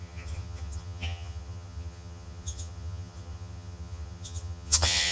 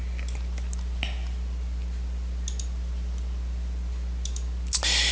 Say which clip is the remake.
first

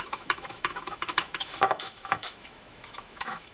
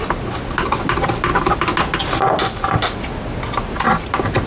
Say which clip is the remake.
first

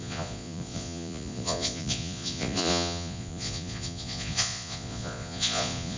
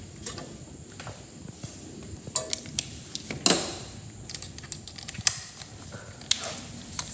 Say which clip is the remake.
first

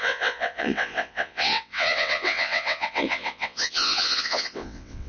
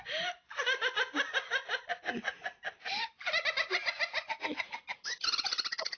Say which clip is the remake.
first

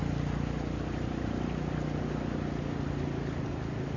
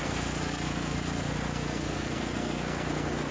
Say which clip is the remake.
second